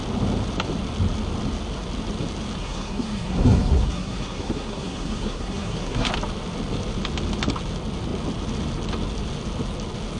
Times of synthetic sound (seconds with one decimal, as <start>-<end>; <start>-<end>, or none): 2.6-6.1